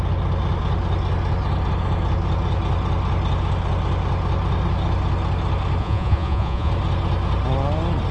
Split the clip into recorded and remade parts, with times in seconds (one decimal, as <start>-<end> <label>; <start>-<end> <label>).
0.0-5.8 recorded; 5.8-6.7 remade; 6.7-8.1 recorded